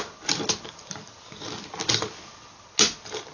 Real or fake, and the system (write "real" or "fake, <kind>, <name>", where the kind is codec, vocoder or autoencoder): real